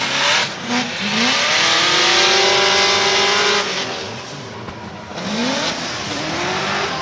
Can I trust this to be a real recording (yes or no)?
yes